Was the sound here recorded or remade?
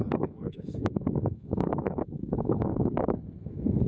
remade